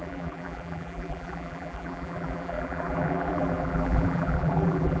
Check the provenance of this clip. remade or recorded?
remade